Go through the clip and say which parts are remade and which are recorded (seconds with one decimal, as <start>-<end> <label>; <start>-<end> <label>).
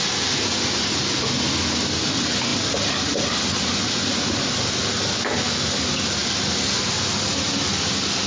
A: 0.0-8.3 recorded